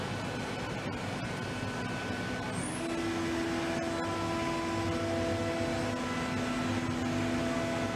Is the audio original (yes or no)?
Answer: yes